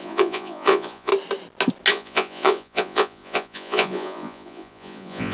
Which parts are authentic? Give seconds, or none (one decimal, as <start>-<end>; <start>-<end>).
1.1-1.9